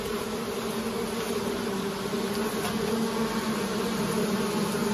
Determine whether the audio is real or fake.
real